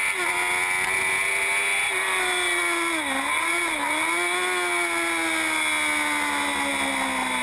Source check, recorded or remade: recorded